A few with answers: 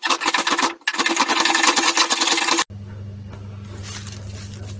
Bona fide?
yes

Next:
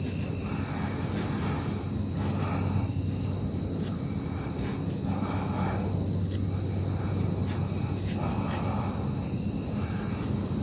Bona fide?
yes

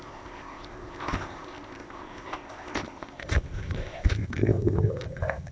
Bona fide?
no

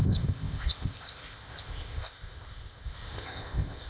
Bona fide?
no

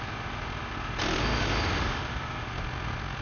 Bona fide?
yes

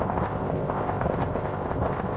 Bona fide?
no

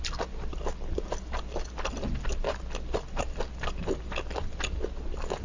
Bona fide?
yes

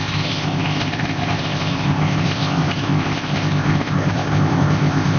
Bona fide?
no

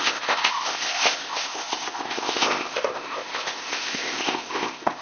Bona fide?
no